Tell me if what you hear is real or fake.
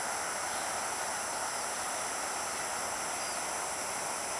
real